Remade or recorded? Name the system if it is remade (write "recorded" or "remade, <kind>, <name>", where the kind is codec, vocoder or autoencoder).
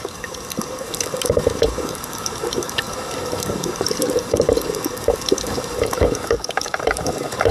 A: remade, codec, DAC